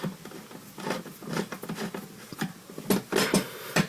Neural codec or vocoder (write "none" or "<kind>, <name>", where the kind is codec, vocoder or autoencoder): none